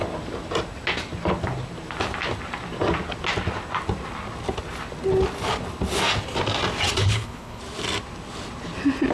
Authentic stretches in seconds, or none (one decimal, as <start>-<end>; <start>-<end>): 0.0-7.0; 7.6-9.1